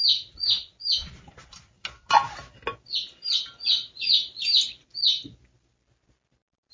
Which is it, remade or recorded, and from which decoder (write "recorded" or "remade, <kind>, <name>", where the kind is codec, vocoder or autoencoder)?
recorded